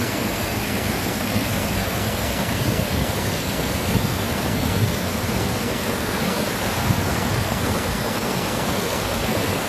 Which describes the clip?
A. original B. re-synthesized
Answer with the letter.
B